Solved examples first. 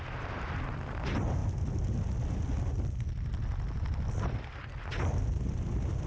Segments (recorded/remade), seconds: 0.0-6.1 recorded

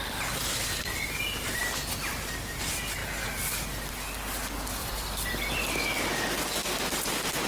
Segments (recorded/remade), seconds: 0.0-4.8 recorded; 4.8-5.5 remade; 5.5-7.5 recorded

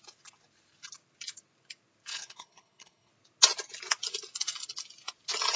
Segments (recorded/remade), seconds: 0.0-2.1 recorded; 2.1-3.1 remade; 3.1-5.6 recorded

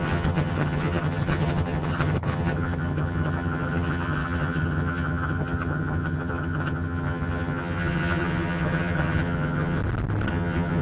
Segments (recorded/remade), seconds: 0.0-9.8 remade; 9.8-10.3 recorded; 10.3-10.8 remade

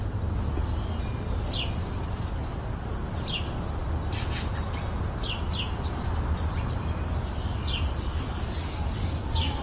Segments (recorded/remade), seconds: 0.0-9.6 recorded

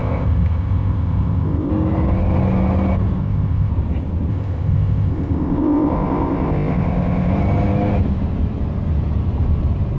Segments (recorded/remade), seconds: 0.0-1.7 remade; 1.7-3.2 recorded; 3.2-3.7 remade; 3.7-4.3 recorded; 4.3-7.3 remade; 7.3-10.0 recorded

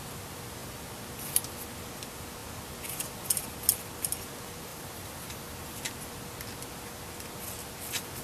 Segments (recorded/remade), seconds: 0.0-4.7 recorded; 4.7-5.9 remade; 5.9-8.2 recorded

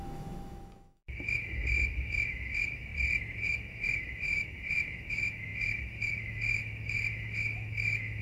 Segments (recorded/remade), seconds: 0.0-2.9 remade; 2.9-3.4 recorded; 3.4-8.2 remade